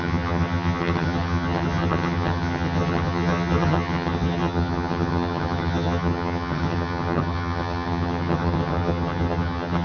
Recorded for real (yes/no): no